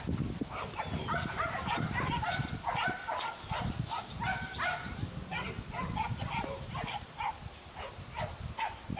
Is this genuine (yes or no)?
yes